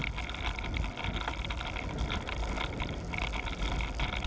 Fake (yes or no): no